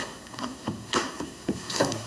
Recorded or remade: remade